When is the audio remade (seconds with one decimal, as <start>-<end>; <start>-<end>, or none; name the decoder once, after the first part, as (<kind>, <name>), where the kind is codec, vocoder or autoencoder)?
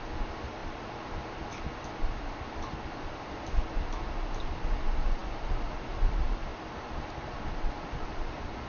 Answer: 6.5-8.7 (vocoder, BigVGAN v2)